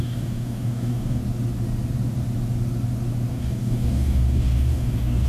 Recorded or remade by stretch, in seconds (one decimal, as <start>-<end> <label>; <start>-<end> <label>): 0.0-1.2 remade; 1.2-3.3 recorded; 3.3-5.3 remade